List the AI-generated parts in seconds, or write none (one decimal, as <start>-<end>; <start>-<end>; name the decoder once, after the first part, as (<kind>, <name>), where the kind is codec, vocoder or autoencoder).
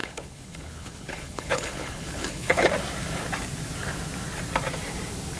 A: 0.0-2.7 (codec, HILCodec)